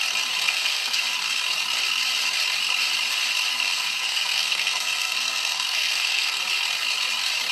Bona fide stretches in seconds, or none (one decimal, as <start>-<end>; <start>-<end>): 0.0-0.4; 1.0-3.5; 6.4-7.5